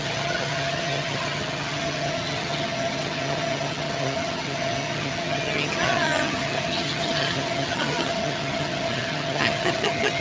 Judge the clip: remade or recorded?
remade